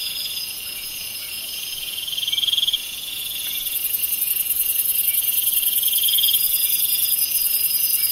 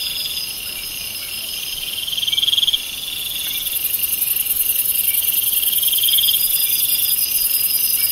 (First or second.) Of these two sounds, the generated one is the first